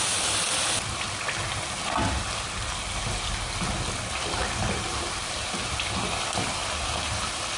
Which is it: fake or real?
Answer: real